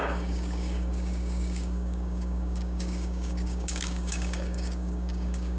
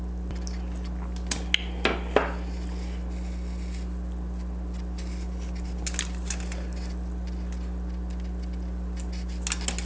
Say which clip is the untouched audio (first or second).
second